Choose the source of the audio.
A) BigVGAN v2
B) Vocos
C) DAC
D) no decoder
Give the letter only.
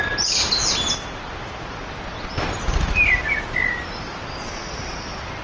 D